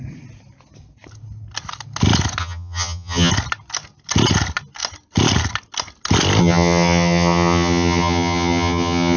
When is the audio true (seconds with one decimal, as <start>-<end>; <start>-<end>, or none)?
0.0-2.4; 3.3-6.4